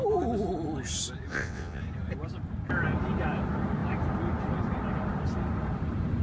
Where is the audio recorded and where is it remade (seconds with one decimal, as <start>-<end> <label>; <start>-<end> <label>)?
0.0-1.3 recorded; 1.3-1.8 remade; 1.8-6.2 recorded